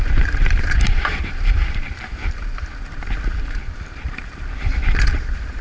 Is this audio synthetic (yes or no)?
yes